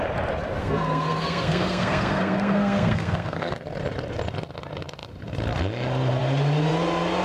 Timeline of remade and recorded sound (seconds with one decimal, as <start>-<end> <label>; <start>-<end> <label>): 0.0-0.6 recorded; 0.6-3.5 remade; 3.5-7.2 recorded

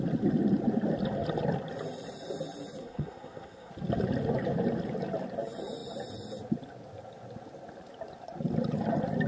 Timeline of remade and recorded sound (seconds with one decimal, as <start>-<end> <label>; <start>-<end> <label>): 0.0-2.8 recorded; 2.8-3.7 remade; 3.7-9.3 recorded